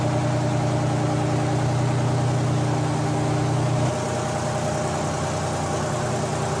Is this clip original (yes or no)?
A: yes